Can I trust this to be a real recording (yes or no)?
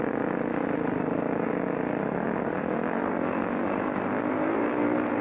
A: yes